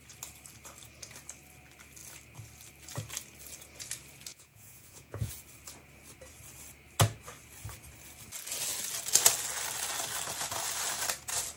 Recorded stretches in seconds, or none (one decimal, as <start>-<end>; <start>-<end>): 0.0-4.3; 5.3-11.6